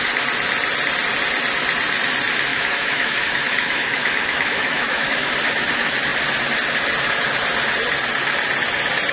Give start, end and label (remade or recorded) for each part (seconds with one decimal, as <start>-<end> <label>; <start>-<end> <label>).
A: 0.0-2.5 recorded; 2.5-5.3 remade; 5.3-9.1 recorded